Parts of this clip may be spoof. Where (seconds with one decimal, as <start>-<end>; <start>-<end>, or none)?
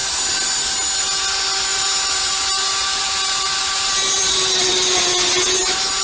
1.7-5.0